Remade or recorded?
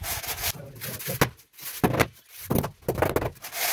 recorded